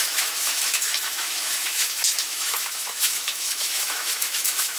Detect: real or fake fake